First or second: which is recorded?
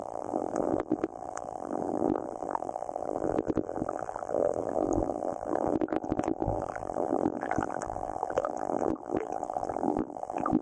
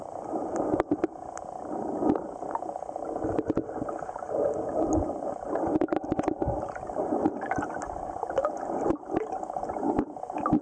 second